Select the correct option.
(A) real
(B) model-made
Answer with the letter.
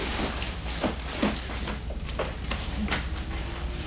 A